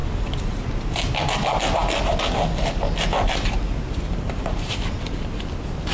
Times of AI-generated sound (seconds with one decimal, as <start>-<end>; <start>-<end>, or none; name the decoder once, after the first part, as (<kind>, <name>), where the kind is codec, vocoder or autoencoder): none